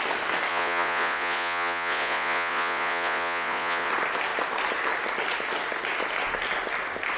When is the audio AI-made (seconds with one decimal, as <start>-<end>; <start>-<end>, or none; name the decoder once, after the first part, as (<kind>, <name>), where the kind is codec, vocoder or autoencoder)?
0.5-3.9 (vocoder, Vocos)